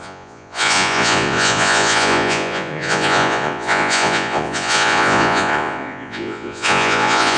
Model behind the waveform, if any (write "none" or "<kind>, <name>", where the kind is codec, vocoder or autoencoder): vocoder, Vocos